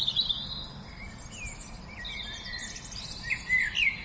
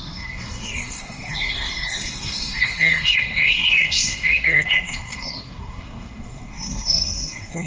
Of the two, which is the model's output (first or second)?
second